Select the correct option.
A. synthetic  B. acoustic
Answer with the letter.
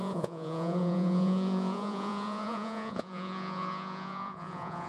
A